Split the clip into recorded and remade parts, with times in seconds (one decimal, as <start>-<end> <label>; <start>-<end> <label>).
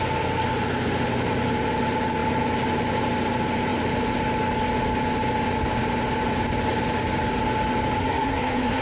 0.0-8.0 recorded; 8.0-8.8 remade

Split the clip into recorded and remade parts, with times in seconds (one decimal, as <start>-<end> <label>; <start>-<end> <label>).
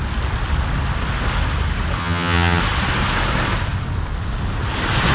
0.0-2.0 recorded; 2.0-2.6 remade; 2.6-5.1 recorded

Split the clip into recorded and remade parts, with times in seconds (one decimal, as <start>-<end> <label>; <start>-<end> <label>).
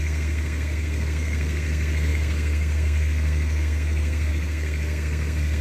0.0-5.6 remade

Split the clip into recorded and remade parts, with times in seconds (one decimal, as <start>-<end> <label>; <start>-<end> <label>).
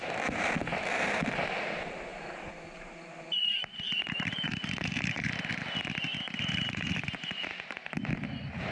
0.0-2.1 recorded; 2.1-5.5 remade; 5.5-6.1 recorded; 6.1-7.7 remade; 7.7-8.1 recorded; 8.1-8.7 remade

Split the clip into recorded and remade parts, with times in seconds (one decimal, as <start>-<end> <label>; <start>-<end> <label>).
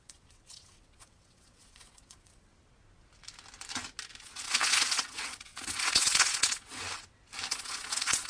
0.0-2.5 remade; 2.5-4.2 recorded; 4.2-6.8 remade; 6.8-7.5 recorded; 7.5-8.3 remade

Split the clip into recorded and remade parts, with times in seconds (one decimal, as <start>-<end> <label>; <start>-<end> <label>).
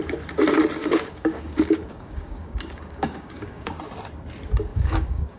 0.0-0.8 recorded; 0.8-3.7 remade; 3.7-4.7 recorded; 4.7-5.4 remade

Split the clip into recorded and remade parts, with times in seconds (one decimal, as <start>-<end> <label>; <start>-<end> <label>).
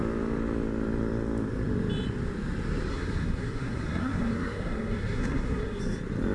0.0-2.9 recorded; 2.9-5.8 remade; 5.8-6.3 recorded